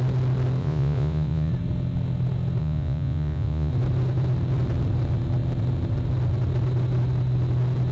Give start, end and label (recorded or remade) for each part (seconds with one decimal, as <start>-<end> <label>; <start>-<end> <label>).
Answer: 0.0-0.6 recorded; 0.6-1.5 remade; 1.5-2.6 recorded; 2.6-3.7 remade; 3.7-7.9 recorded